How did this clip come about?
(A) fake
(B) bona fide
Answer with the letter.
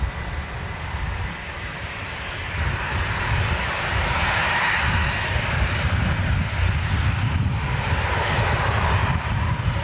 B